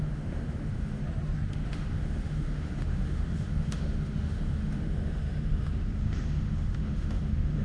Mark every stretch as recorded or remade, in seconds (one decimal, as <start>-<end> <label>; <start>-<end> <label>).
0.0-1.0 remade; 1.0-1.5 recorded; 1.5-7.6 remade